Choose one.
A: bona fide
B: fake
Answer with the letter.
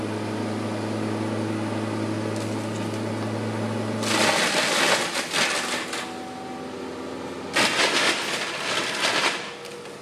A